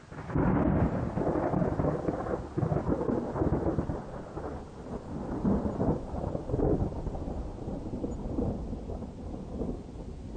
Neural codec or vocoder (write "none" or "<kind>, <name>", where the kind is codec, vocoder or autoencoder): none